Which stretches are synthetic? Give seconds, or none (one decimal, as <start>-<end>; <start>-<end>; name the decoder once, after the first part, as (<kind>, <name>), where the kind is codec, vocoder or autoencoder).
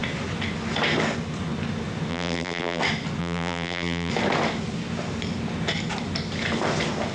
2.1-2.8 (vocoder, BigVGAN v2); 3.2-4.1